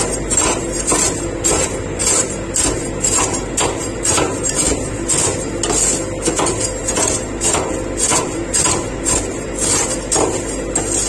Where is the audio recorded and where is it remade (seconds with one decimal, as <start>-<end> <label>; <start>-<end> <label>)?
0.0-11.1 recorded